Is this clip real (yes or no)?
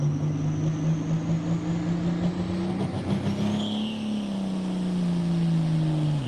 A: yes